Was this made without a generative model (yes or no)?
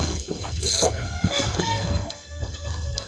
no